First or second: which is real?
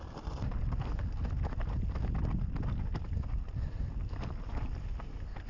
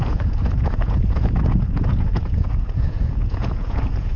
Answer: first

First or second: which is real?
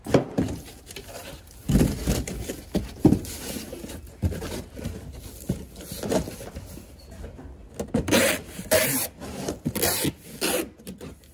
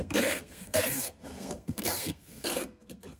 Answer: first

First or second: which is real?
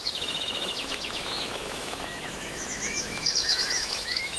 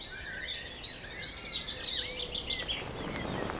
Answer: second